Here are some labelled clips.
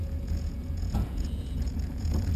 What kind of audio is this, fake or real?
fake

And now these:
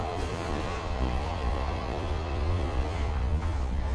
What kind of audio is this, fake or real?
fake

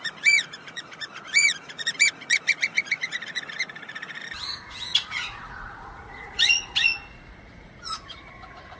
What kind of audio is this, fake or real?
fake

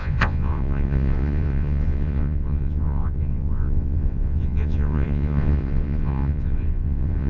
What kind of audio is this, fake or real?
fake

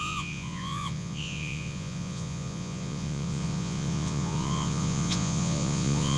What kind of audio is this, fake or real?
fake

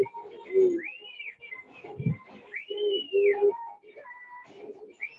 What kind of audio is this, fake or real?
real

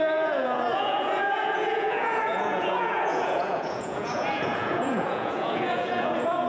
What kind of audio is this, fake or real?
fake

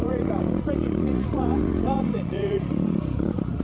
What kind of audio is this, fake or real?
fake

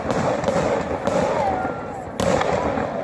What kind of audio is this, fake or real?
real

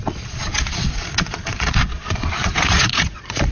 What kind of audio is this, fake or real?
fake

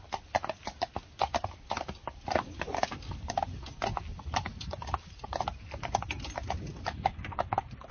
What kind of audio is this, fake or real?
real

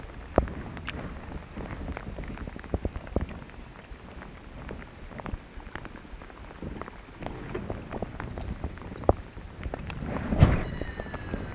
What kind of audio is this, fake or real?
real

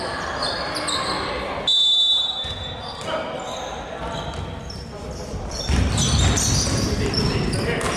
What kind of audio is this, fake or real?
real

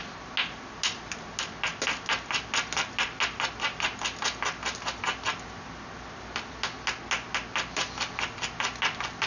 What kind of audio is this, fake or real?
real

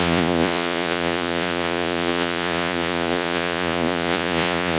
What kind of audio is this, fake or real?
fake